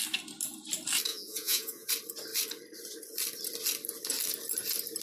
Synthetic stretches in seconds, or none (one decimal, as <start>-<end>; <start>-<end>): 1.1-1.9